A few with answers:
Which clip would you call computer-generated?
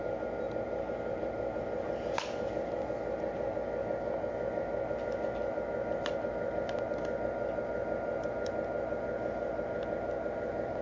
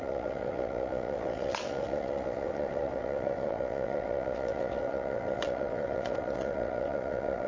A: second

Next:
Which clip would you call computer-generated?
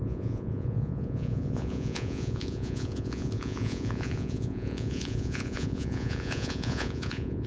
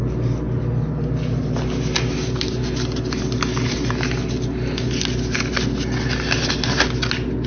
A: first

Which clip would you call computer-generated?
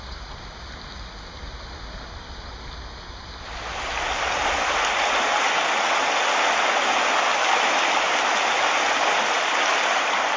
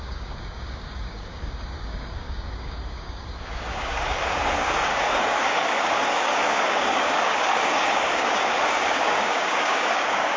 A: second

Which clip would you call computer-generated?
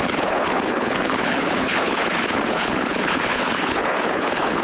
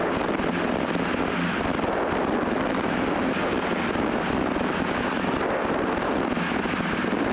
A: first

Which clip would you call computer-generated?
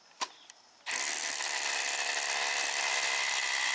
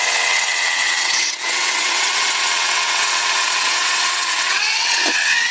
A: second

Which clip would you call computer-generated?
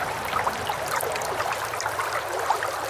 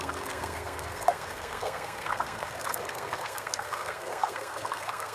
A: second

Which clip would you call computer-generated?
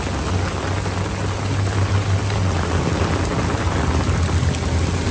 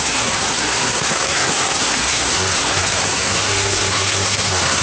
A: second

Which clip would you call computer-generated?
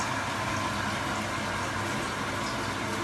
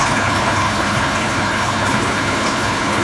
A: second